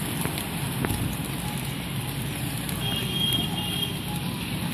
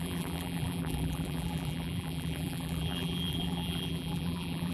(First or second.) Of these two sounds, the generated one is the second